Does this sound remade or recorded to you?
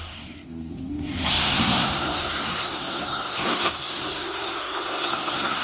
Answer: remade